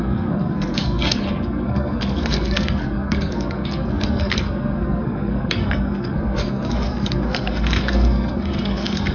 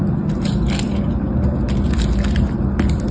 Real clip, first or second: second